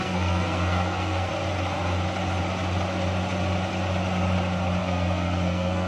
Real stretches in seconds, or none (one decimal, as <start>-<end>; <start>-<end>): 1.3-4.8